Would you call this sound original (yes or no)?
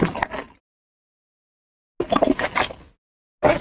yes